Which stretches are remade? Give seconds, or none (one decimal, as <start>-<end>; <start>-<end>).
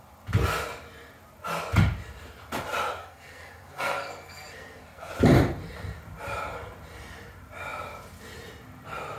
3.0-5.1